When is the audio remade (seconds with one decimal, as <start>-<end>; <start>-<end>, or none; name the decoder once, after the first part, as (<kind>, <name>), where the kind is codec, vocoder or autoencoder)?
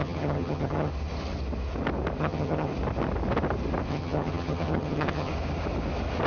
0.0-0.9 (vocoder, HiFi-GAN); 2.2-2.7; 3.9-5.3